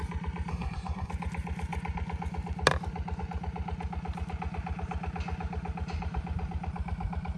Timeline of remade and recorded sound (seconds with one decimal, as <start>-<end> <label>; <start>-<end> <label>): 0.0-0.5 recorded; 0.5-1.1 remade; 1.1-7.4 recorded